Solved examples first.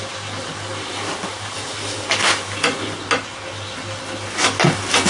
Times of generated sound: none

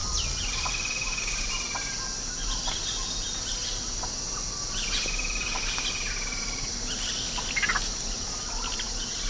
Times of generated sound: none

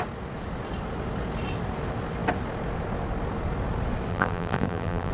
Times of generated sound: 4.1-5.1

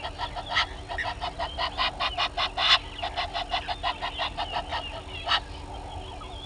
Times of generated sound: none

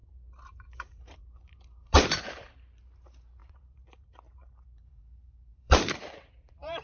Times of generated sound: 0.0-6.8

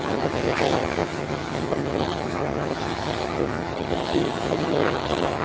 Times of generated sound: 0.0-5.4

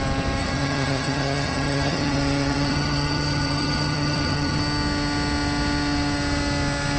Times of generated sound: 0.4-4.6

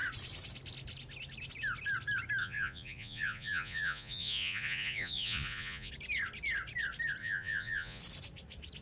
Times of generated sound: 2.4-5.9; 7.2-8.0